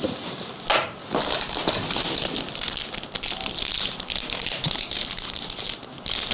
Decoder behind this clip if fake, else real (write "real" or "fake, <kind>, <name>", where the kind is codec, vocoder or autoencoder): real